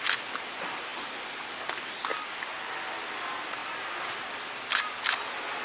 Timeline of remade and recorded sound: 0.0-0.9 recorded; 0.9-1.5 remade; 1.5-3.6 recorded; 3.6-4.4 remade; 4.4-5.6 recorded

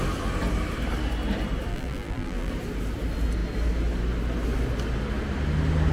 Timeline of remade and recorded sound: 0.0-1.7 recorded; 1.7-2.5 remade; 2.5-5.9 recorded

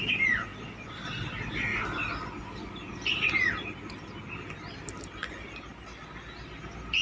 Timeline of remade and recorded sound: 0.0-7.0 recorded